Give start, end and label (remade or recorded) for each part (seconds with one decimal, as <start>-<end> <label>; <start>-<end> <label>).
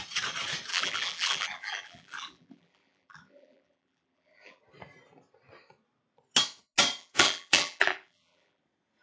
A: 0.0-0.7 recorded; 0.7-4.6 remade; 4.6-7.0 recorded; 7.0-8.6 remade; 8.6-9.0 recorded